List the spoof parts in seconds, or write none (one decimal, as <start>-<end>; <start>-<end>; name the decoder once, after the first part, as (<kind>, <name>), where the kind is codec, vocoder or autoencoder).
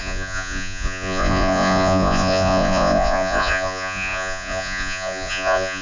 0.0-5.8 (vocoder, Vocos)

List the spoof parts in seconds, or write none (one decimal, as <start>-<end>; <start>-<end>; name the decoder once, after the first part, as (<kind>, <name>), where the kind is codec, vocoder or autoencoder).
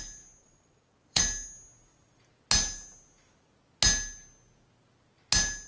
0.4-1.2 (vocoder, Vocos)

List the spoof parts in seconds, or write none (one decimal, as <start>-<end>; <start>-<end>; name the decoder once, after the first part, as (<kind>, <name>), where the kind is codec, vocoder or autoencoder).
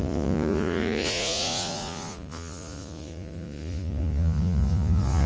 0.0-5.3 (vocoder, Vocos)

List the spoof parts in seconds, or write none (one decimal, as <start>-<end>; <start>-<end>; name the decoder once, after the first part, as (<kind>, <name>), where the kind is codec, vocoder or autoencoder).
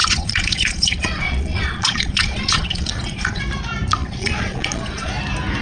0.0-3.4 (vocoder, Vocos); 4.0-5.1